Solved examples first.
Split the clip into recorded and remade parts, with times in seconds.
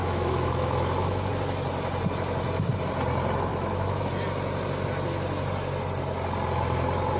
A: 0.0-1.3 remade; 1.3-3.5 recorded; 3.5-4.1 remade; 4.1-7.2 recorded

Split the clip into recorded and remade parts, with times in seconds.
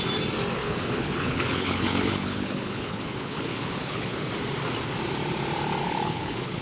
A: 0.0-0.6 recorded; 0.6-4.3 remade; 4.3-5.8 recorded; 5.8-6.6 remade